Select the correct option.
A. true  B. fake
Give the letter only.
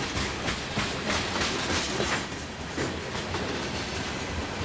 A